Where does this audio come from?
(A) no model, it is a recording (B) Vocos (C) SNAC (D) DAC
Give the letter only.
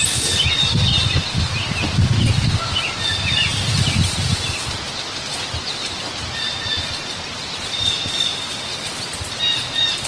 A